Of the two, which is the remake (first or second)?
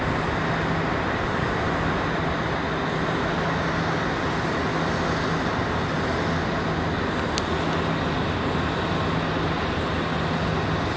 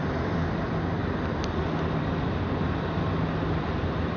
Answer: second